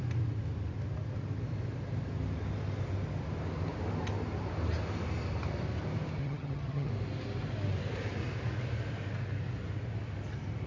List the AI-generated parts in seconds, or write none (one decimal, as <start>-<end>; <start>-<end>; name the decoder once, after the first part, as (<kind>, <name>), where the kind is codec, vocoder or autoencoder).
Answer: 6.2-6.9 (vocoder, HiFi-GAN)